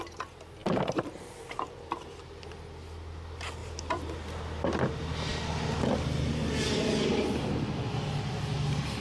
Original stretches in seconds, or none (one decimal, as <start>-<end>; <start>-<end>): 0.0-0.6; 2.1-3.6; 4.1-9.0